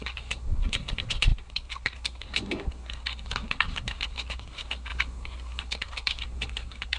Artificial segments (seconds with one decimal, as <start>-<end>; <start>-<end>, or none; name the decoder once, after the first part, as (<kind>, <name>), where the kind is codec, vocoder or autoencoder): 0.0-7.0 (codec, SNAC)

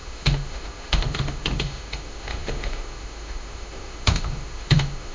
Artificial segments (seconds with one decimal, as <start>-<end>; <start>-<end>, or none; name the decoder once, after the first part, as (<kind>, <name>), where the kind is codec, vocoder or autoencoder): 0.0-5.1 (autoencoder, DAC-VAE)

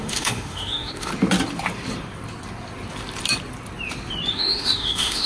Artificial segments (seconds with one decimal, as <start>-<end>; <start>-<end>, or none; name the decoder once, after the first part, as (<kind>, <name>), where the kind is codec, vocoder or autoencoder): 0.0-1.1 (autoencoder, DAC-VAE); 4.3-5.3

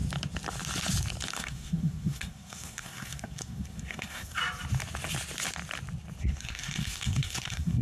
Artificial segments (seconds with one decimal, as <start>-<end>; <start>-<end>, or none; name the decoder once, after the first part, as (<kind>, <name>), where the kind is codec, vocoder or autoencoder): 1.3-4.4 (codec, SNAC); 6.2-7.8

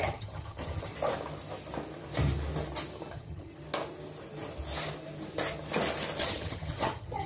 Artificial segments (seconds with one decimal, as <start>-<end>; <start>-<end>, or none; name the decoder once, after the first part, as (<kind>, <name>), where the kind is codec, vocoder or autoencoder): 0.0-0.9 (vocoder, HiFi-GAN); 3.1-3.5; 6.2-7.3

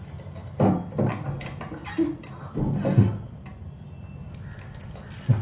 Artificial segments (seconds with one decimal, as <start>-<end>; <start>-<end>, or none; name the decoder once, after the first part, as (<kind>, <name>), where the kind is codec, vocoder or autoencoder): none

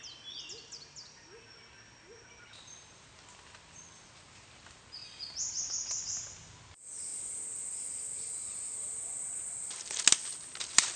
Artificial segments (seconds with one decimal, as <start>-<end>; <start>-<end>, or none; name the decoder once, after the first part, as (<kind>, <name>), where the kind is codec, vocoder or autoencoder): none

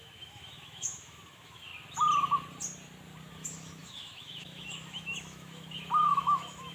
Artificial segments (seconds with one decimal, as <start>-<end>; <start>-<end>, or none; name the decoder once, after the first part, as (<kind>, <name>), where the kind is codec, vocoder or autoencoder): 0.0-1.7 (autoencoder, DAC-VAE); 3.3-6.7